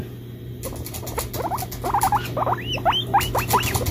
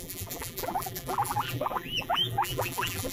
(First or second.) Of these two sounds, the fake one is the second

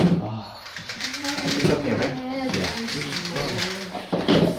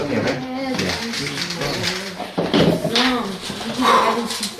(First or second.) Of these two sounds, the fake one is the first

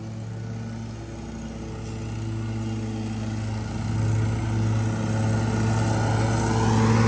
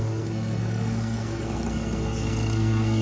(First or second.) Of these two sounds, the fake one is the second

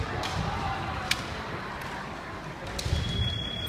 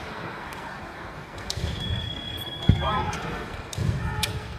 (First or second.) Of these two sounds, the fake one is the second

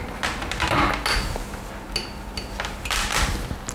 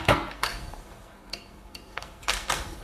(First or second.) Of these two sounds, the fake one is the second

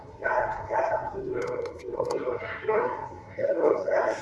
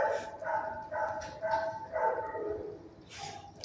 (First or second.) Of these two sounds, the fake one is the first